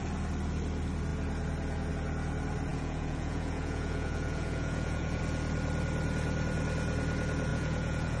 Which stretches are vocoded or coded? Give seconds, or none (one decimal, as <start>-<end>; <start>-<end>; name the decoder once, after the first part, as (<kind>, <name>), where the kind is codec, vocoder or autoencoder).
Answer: 2.7-5.2 (vocoder, Vocos); 7.5-8.2